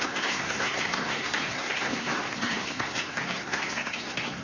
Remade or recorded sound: remade